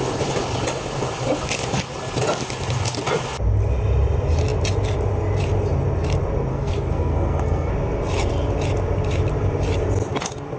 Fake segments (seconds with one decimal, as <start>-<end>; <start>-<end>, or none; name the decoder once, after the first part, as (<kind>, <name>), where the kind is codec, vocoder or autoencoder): 6.5-7.7 (codec, SNAC)